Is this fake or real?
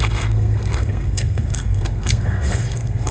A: fake